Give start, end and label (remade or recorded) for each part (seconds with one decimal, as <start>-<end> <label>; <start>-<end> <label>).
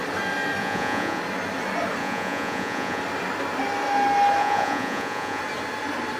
0.0-0.6 recorded; 0.6-1.2 remade; 1.2-2.0 recorded; 2.0-3.0 remade; 3.0-4.4 recorded; 4.4-5.4 remade; 5.4-6.2 recorded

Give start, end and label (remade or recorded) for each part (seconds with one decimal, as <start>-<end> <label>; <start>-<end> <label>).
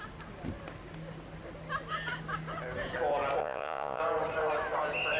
0.0-3.4 recorded; 3.4-4.0 remade; 4.0-5.2 recorded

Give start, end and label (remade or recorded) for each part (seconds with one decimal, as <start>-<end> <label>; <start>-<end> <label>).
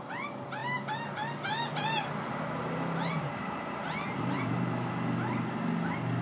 0.0-6.2 recorded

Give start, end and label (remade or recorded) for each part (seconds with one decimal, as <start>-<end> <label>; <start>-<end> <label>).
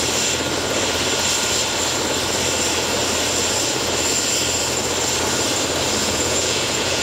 0.0-6.0 recorded; 6.0-7.0 remade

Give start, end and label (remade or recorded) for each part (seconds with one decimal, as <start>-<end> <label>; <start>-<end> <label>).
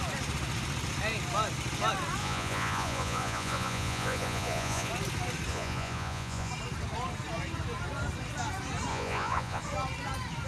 0.0-2.2 recorded; 2.2-4.9 remade; 4.9-5.5 recorded; 5.5-6.5 remade; 6.5-8.9 recorded; 8.9-9.6 remade; 9.6-10.5 recorded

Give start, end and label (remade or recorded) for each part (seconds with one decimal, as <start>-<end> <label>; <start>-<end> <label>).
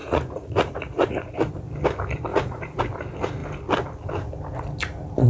0.0-1.5 remade; 1.5-2.3 recorded; 2.3-2.8 remade; 2.8-5.3 recorded